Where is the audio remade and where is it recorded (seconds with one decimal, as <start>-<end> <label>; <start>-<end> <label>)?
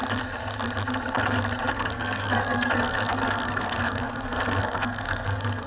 0.0-1.7 recorded; 1.7-5.7 remade